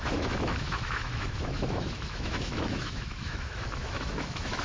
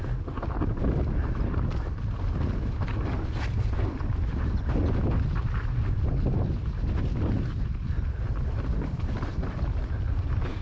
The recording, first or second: second